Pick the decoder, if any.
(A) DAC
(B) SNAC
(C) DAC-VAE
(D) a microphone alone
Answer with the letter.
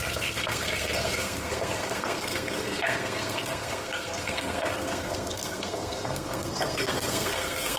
B